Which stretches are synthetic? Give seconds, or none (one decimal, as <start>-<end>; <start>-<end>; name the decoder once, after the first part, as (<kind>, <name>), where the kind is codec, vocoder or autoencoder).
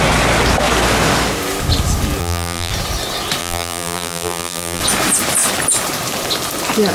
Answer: 2.2-2.7 (vocoder, BigVGAN v2); 3.4-4.8